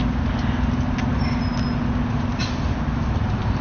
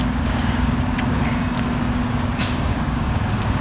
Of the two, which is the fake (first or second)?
second